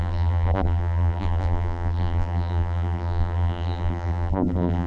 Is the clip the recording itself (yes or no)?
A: no